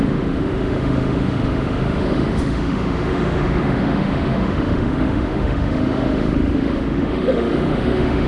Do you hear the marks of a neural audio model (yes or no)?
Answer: yes